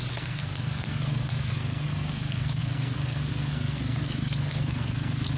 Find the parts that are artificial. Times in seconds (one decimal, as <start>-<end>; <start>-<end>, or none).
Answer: 0.0-5.4